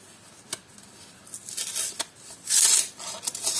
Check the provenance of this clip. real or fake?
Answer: real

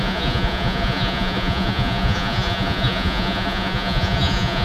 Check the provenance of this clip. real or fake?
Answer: fake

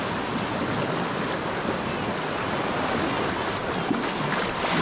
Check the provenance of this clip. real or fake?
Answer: real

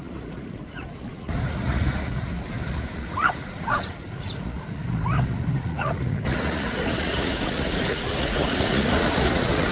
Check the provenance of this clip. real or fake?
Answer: fake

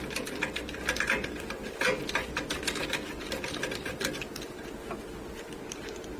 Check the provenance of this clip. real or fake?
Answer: real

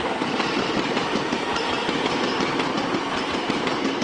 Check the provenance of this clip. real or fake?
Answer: fake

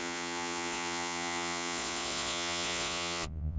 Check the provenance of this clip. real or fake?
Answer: fake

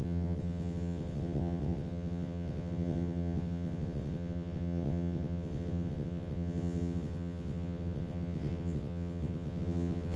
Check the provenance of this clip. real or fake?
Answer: fake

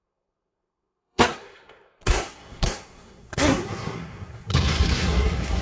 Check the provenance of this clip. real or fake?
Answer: fake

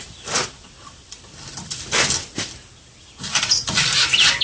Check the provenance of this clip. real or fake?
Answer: fake